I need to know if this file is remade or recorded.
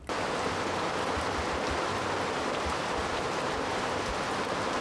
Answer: recorded